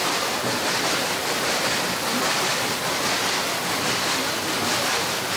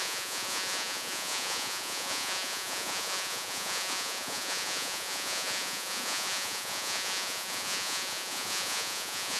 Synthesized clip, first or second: second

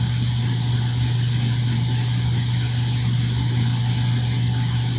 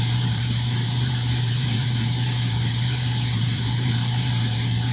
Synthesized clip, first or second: second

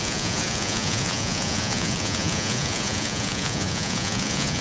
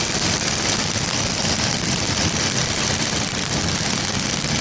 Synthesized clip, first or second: first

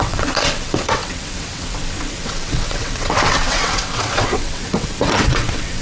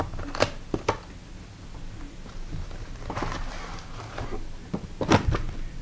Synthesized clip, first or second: first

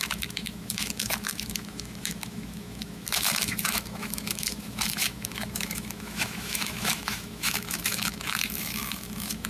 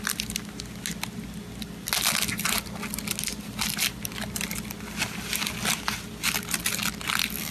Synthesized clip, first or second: first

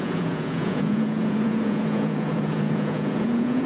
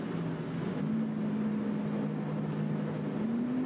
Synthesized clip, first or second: first